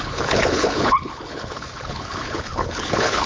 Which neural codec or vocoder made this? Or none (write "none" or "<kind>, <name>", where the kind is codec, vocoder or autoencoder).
codec, HILCodec